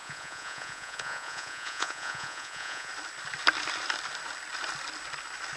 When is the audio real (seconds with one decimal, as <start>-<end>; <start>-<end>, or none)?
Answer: 2.9-5.6